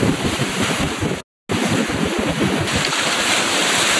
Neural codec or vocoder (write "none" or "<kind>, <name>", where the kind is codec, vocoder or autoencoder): none